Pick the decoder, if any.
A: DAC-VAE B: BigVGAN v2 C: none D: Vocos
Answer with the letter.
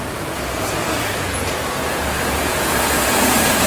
D